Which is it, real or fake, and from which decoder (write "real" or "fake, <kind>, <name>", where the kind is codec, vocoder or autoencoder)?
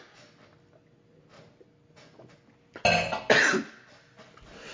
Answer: real